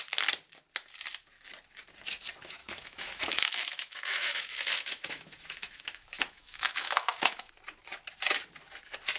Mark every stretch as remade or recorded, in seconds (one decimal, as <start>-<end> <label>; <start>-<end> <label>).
0.0-2.6 recorded; 2.6-7.5 remade; 7.5-9.2 recorded